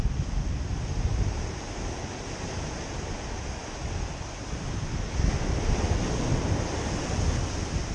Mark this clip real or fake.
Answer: real